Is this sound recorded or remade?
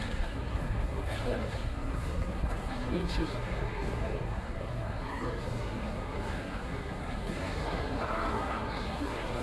remade